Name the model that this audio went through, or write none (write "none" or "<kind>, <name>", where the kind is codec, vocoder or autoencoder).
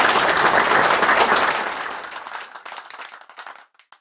none